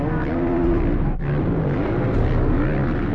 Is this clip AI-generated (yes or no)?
no